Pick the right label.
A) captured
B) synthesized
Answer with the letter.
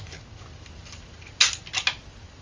A